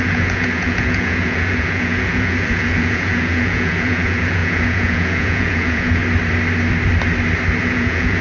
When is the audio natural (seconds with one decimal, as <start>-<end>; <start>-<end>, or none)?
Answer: 6.0-7.6

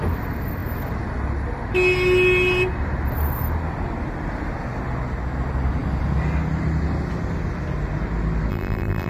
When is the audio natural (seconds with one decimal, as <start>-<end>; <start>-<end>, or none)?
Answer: 0.0-8.5